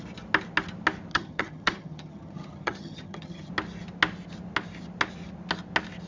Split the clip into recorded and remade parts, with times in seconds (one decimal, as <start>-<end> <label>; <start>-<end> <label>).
0.0-1.1 recorded; 1.1-3.5 remade; 3.5-6.1 recorded